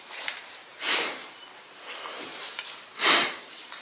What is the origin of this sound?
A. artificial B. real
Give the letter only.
A